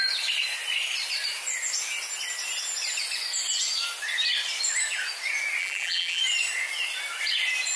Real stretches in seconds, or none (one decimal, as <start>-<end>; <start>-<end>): 0.0-5.6; 6.2-7.8